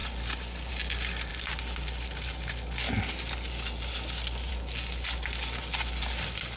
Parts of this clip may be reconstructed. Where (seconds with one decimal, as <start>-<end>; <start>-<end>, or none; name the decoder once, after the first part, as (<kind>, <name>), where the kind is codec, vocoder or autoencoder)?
none